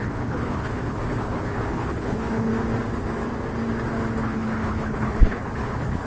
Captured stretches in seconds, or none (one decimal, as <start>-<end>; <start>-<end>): 2.5-4.2